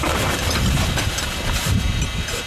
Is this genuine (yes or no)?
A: yes